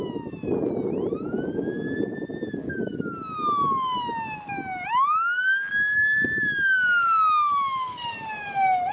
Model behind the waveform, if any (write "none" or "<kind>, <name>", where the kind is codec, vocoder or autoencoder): none